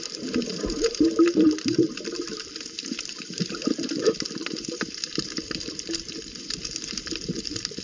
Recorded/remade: remade